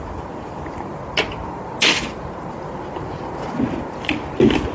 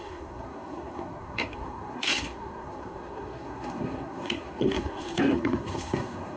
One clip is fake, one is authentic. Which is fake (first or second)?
second